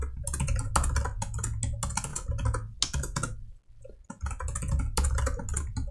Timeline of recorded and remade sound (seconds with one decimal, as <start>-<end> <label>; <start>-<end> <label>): 0.0-5.9 recorded